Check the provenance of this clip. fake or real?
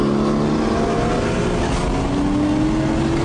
real